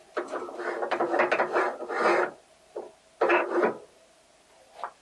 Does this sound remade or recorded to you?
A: recorded